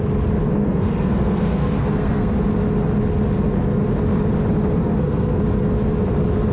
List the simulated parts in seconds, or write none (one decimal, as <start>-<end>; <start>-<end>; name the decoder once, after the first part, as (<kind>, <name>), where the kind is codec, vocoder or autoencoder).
0.6-2.4 (codec, SNAC); 4.8-5.4